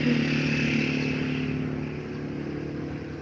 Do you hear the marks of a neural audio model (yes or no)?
no